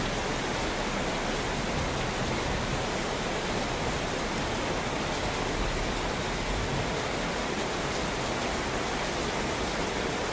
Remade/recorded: recorded